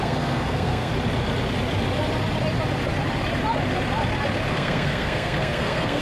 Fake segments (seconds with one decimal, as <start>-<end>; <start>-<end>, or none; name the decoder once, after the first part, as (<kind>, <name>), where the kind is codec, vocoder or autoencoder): 0.0-0.9 (codec, SNAC); 4.5-6.0